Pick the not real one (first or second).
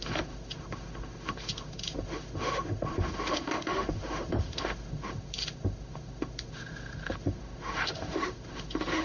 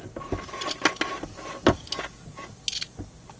first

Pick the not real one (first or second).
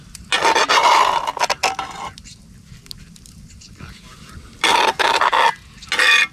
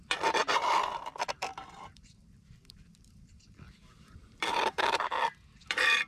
second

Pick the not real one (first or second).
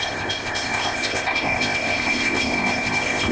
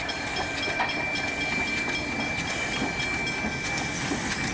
first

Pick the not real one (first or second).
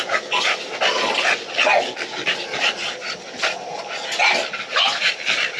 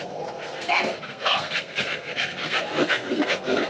second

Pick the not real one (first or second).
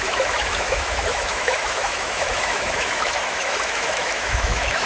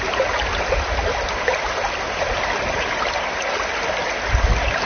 first